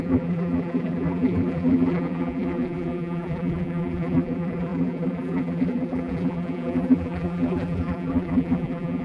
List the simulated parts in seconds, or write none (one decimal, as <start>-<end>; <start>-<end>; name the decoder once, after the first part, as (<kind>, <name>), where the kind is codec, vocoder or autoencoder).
0.0-9.0 (vocoder, BigVGAN v2)